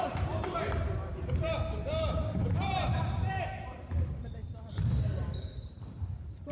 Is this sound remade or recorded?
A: remade